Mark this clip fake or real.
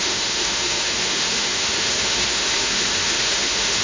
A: fake